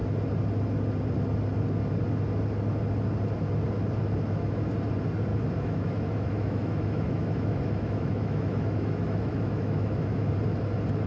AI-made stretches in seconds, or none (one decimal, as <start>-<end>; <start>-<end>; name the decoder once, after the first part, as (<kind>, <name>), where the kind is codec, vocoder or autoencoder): 5.3-10.3 (autoencoder, DAC-VAE)